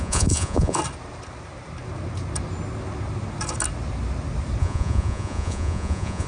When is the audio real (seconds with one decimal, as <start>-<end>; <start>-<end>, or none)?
0.8-4.6